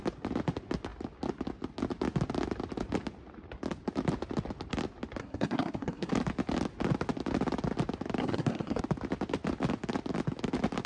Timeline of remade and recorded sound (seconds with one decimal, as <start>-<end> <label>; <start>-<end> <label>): 0.0-5.2 recorded; 5.2-6.1 remade; 6.1-8.2 recorded; 8.2-8.8 remade; 8.8-10.9 recorded